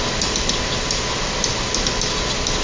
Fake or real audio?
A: real